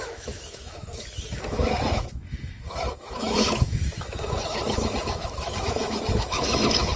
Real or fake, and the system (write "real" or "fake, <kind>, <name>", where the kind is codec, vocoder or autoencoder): fake, autoencoder, DAC-VAE